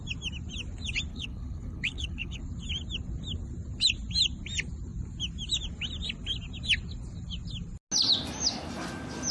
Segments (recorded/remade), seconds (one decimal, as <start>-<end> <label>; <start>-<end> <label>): 0.0-1.1 recorded; 1.1-2.4 remade; 2.4-9.3 recorded